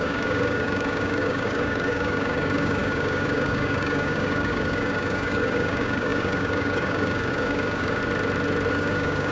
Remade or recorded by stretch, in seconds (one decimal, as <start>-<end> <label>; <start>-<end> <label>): 0.0-8.0 remade; 8.0-8.7 recorded; 8.7-9.3 remade